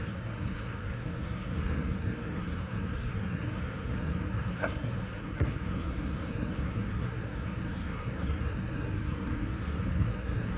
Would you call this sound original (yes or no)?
no